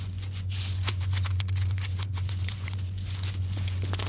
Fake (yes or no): yes